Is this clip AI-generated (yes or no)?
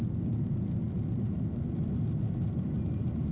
no